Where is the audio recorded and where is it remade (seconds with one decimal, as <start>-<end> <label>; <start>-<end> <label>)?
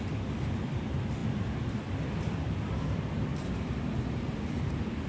0.0-5.1 recorded